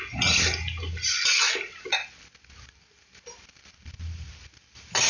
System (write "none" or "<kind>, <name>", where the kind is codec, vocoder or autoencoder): none